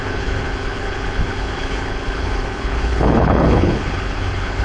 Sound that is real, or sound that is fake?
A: fake